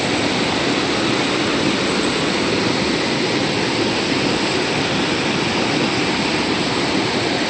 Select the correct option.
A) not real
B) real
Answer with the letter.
B